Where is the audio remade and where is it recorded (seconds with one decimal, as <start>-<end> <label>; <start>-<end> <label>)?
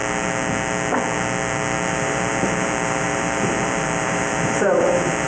0.0-1.9 recorded; 1.9-5.3 remade